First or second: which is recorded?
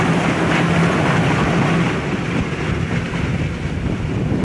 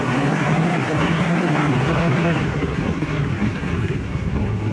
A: first